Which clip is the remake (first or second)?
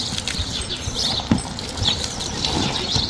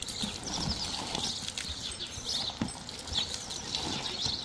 first